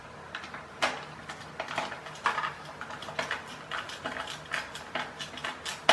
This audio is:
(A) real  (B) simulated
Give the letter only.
A